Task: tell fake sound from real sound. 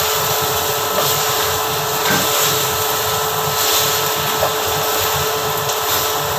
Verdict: real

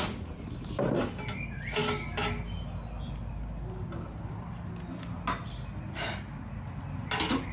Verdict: real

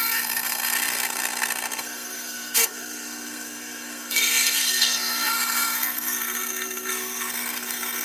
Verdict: fake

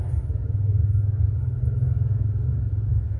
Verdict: real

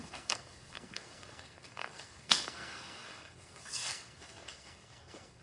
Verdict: fake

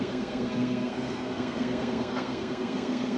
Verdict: fake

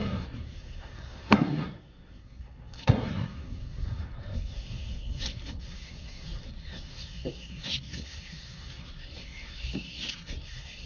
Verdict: fake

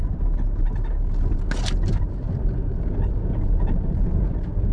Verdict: real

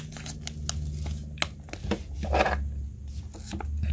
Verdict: real